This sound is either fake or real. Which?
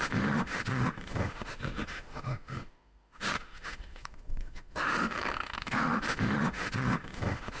fake